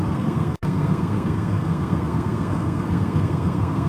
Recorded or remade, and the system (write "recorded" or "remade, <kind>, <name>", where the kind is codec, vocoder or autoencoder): remade, codec, SNAC